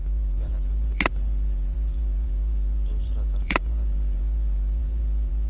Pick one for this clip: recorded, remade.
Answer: remade